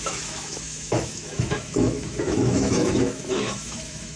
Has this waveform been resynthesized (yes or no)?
yes